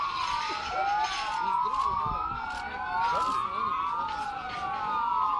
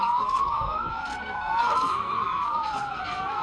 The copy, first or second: second